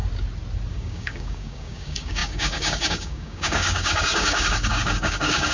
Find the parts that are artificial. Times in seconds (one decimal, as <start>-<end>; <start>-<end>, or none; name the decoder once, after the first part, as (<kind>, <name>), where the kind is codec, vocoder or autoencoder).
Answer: 0.7-5.5 (codec, DAC)